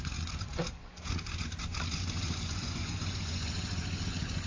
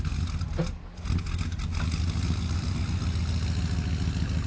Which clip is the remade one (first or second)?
first